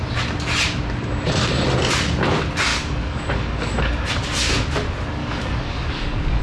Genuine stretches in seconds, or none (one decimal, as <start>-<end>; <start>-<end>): 0.0-2.7; 3.9-5.2